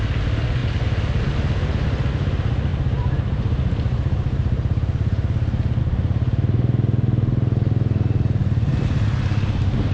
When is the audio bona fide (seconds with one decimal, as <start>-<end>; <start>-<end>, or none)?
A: 0.0-2.7; 5.8-8.4; 9.0-9.9